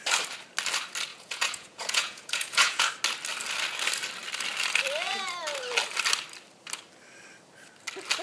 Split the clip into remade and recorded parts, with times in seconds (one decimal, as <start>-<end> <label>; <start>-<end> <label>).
0.0-1.1 recorded; 1.1-2.9 remade; 2.9-8.2 recorded